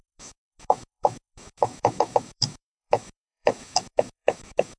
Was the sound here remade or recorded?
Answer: remade